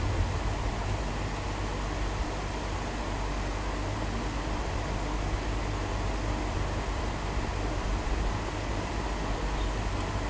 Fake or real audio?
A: real